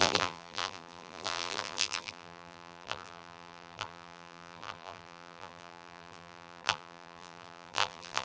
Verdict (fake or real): fake